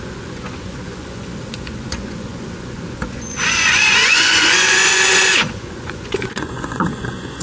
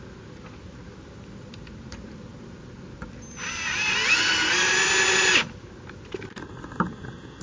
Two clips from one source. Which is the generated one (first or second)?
first